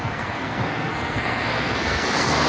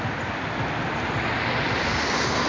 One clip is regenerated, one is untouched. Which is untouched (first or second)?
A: second